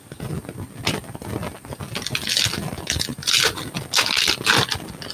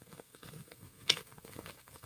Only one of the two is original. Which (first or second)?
first